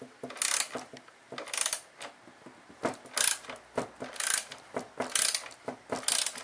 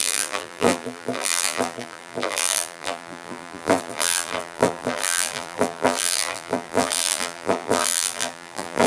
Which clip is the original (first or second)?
first